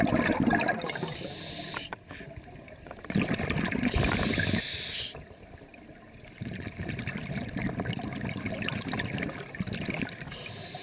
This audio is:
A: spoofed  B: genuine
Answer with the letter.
B